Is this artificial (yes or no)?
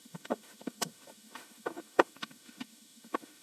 yes